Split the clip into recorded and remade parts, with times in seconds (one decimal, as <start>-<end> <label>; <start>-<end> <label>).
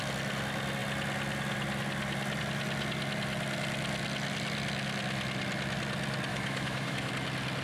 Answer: 0.0-6.3 recorded; 6.3-7.1 remade; 7.1-7.6 recorded